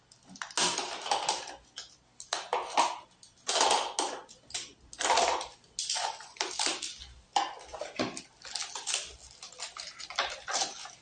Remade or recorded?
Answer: recorded